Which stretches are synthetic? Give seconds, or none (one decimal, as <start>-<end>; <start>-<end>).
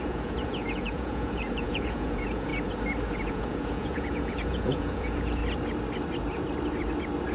0.0-2.5; 3.2-5.4